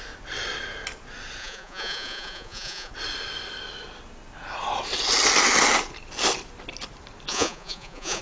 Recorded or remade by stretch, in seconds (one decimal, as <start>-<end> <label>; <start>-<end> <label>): 0.0-1.4 recorded; 1.4-2.9 remade; 2.9-7.3 recorded; 7.3-8.2 remade